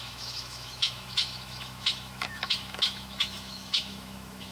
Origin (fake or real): fake